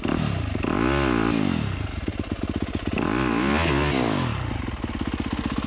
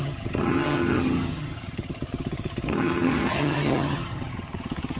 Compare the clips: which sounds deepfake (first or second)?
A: second